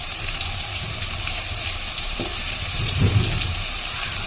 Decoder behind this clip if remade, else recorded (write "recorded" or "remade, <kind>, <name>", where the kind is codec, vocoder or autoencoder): remade, vocoder, BigVGAN v2